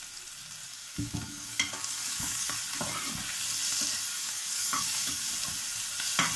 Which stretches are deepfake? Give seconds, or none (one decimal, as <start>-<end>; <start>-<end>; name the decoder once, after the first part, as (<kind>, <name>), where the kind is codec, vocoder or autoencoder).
0.7-2.5 (codec, DAC); 4.1-5.3